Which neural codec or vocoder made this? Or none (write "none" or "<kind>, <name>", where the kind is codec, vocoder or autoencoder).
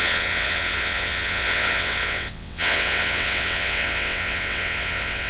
vocoder, WaveNeXt